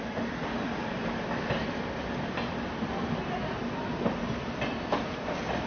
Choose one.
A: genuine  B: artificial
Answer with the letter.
A